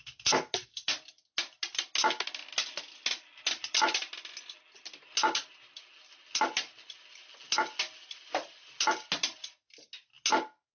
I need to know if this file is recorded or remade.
recorded